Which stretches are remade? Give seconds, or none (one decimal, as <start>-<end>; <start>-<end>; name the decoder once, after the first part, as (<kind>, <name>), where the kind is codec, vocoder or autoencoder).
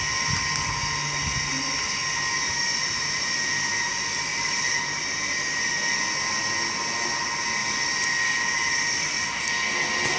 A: 4.3-5.7 (vocoder, BigVGAN v2); 7.6-9.4